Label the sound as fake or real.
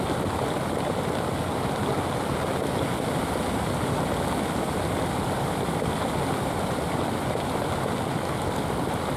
real